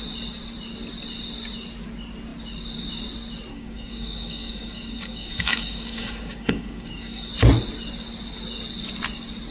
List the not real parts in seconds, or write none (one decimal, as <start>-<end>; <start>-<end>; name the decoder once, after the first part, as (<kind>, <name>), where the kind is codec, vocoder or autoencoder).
3.5-7.3 (codec, DAC)